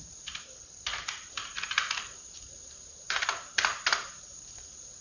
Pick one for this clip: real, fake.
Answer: fake